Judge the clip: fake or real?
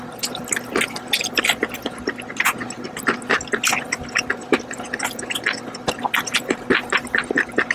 real